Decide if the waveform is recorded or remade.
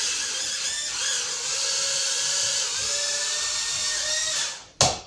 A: recorded